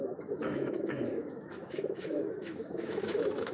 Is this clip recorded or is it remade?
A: remade